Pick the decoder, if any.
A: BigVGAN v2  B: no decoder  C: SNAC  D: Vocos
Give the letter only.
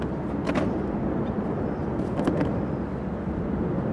B